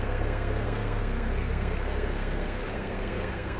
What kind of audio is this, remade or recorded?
remade